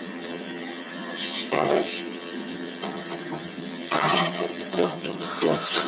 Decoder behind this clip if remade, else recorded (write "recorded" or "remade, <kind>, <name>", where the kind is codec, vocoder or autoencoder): remade, vocoder, HiFi-GAN